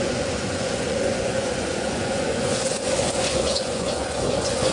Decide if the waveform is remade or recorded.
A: remade